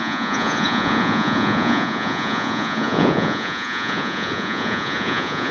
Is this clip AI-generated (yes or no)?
yes